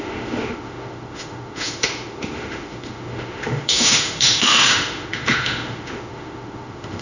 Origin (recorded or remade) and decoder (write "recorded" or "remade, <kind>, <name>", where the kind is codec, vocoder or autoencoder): remade, autoencoder, DAC-VAE